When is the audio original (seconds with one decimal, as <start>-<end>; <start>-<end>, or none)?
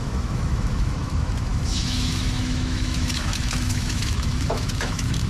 none